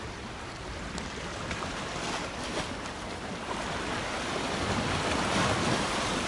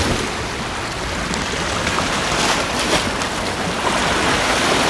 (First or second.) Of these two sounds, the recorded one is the second